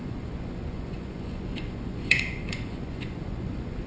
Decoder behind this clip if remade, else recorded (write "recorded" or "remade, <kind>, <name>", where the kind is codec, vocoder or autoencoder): remade, vocoder, Vocos